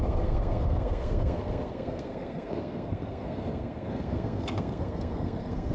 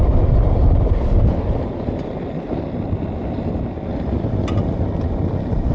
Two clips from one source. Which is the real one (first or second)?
second